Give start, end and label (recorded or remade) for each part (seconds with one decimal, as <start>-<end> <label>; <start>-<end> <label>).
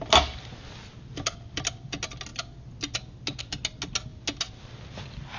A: 0.0-5.4 recorded